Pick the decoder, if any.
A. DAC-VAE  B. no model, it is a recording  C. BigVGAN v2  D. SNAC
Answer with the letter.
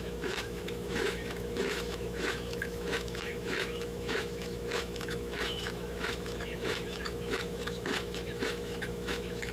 A